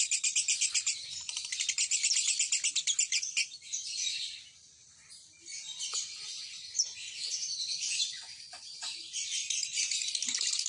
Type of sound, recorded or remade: remade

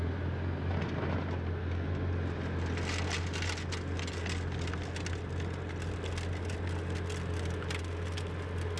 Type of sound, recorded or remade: recorded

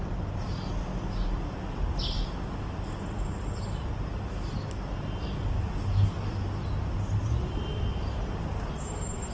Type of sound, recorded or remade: recorded